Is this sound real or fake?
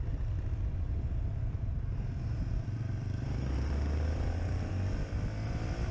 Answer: fake